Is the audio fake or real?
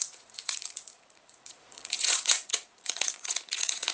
fake